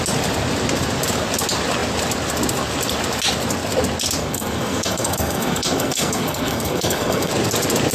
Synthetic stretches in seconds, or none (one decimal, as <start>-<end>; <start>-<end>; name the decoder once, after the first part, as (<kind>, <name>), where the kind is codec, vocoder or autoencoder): 4.2-7.3 (codec, SNAC)